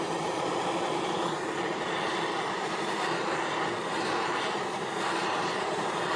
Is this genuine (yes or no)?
no